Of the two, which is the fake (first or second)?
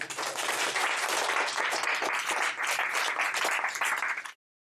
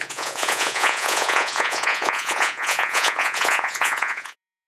second